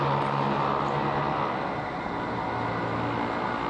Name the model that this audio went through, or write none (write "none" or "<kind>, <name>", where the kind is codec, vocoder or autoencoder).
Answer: none